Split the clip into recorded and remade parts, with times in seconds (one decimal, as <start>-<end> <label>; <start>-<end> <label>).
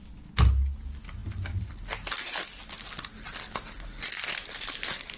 0.0-5.2 recorded